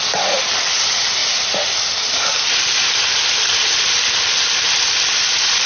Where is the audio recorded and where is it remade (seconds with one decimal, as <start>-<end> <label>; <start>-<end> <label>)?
0.0-5.7 recorded